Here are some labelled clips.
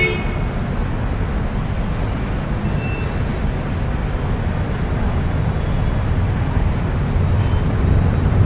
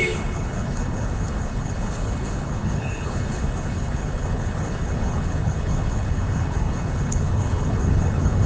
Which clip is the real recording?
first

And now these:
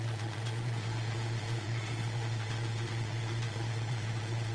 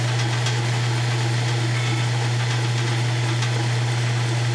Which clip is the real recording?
second